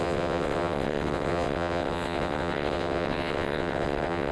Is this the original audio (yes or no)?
no